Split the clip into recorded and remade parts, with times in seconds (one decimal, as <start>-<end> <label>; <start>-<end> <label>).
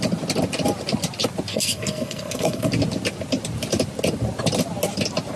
0.0-1.5 recorded; 1.5-2.7 remade; 2.7-5.4 recorded